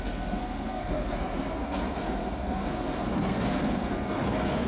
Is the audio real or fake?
fake